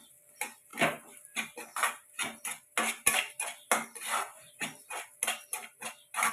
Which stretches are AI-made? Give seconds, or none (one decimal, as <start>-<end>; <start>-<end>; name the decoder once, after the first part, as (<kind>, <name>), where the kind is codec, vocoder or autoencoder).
5.6-6.3 (vocoder, BigVGAN v2)